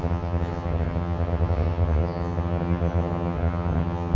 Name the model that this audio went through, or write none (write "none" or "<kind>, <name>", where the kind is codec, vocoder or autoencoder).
vocoder, HiFi-GAN